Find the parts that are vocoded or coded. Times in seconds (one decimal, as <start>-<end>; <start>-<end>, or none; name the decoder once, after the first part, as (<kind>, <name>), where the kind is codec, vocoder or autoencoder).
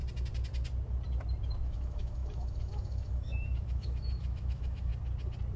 1.5-4.9 (autoencoder, DAC-VAE)